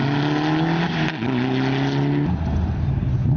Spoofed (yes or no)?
no